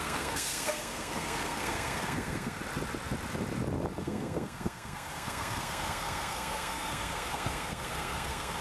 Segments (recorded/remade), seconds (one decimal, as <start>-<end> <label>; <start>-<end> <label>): 0.0-2.6 remade; 2.6-4.0 recorded; 4.0-8.6 remade